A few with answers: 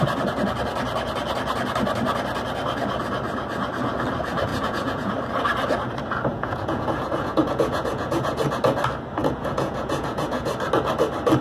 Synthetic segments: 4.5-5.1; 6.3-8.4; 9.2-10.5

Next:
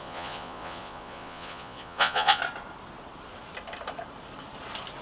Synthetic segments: 0.0-2.4

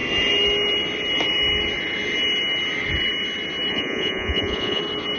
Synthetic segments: 3.7-4.8

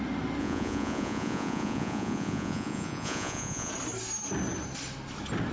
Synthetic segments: 0.4-3.7

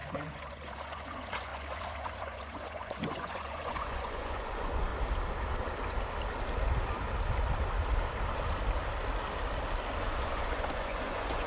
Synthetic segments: 0.0-4.9; 10.0-11.5